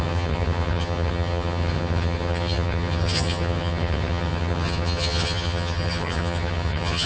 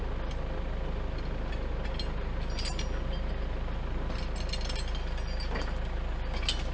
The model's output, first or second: first